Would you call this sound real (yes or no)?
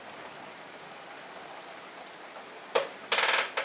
yes